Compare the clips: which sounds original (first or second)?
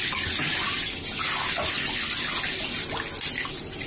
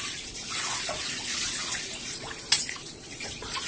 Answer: first